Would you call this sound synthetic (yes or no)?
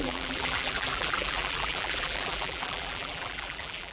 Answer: yes